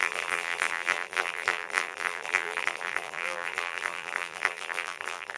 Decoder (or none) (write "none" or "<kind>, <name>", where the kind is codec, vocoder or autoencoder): vocoder, BigVGAN v2